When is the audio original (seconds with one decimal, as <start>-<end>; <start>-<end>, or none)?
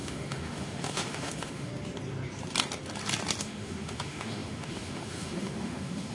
1.7-3.4